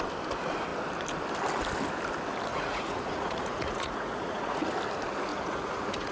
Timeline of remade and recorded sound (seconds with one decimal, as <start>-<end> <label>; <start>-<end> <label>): 0.0-2.5 recorded; 2.5-4.7 remade; 4.7-5.3 recorded; 5.3-6.1 remade